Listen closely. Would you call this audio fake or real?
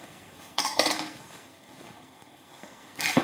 fake